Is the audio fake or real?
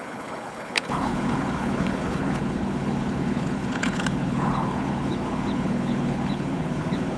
fake